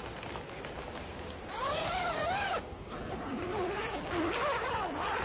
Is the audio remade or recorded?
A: recorded